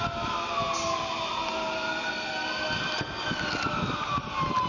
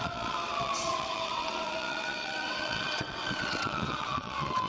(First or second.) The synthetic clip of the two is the second